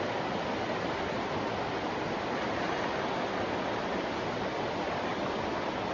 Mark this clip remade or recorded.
recorded